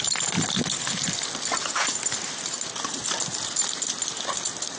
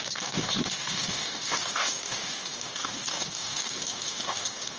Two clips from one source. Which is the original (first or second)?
first